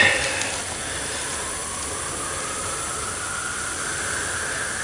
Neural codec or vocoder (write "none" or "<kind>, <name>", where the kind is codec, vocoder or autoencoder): none